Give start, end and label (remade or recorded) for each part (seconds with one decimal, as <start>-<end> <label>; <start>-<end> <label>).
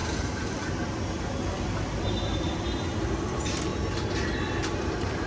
0.0-3.2 recorded; 3.2-3.7 remade; 3.7-5.3 recorded